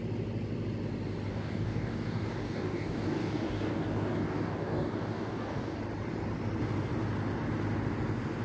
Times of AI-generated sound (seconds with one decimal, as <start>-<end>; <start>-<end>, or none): 1.3-5.8